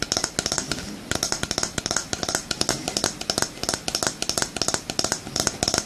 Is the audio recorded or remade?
recorded